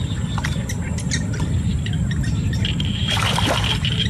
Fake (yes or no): yes